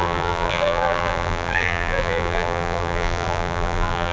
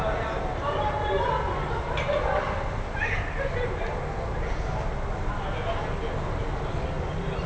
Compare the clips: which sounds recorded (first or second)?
second